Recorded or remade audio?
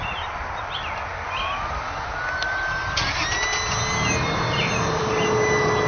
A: recorded